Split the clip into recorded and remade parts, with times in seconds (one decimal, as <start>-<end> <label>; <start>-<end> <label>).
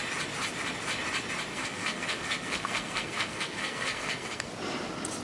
0.0-1.5 recorded; 1.5-4.5 remade; 4.5-5.2 recorded